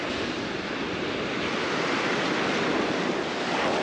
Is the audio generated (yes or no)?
no